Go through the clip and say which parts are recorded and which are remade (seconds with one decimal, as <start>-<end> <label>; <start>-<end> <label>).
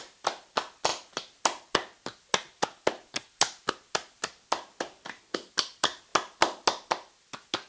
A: 0.0-7.7 recorded